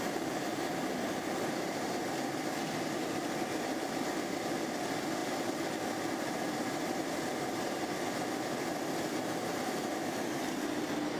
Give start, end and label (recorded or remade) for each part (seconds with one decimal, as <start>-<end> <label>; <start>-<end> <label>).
0.0-11.2 recorded